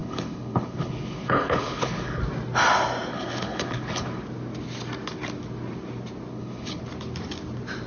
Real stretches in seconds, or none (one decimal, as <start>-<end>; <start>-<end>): 2.2-3.1; 4.2-6.3; 6.8-7.9